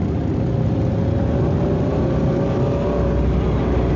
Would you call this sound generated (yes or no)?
no